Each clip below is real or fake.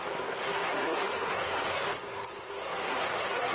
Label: fake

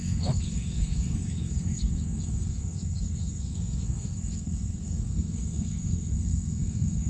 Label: fake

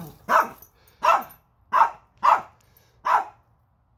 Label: real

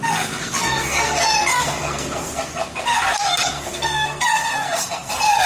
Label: fake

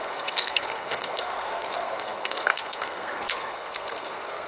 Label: fake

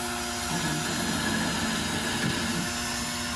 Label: real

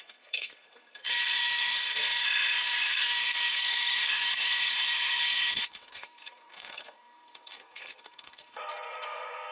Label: fake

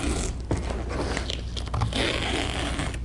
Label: real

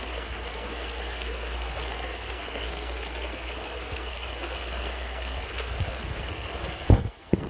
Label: fake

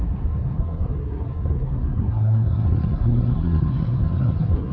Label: fake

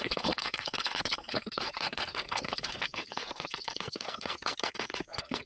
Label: fake